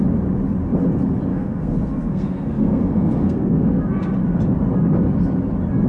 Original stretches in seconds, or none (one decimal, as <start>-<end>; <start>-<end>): 0.0-1.3; 3.8-5.9